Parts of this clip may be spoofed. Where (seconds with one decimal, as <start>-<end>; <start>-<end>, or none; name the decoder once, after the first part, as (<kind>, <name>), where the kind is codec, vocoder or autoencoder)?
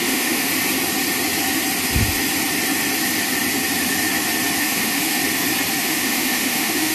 0.0-0.5 (autoencoder, DAC-VAE); 4.6-5.2; 5.8-6.9